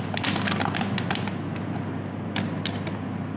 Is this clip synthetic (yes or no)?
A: no